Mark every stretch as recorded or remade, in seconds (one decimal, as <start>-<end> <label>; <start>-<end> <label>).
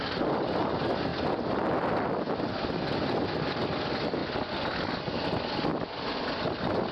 0.0-6.9 recorded